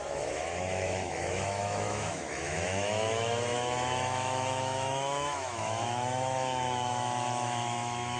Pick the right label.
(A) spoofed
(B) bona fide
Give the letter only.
A